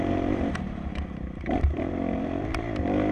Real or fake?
fake